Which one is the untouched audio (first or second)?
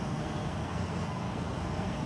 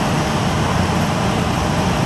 second